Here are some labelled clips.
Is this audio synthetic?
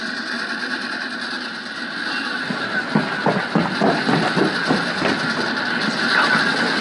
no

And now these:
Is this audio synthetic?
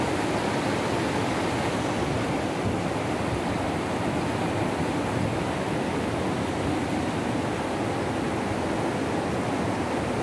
no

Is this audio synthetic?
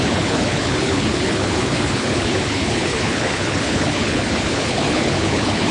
yes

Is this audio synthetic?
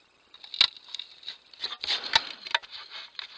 no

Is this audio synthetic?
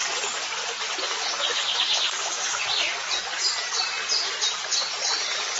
no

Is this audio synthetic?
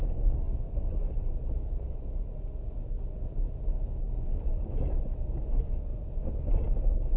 no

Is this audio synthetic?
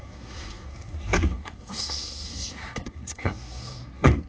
yes